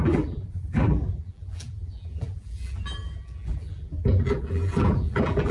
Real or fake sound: fake